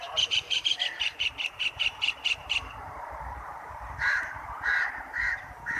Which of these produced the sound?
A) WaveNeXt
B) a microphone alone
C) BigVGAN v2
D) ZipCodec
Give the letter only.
C